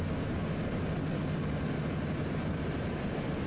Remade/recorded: recorded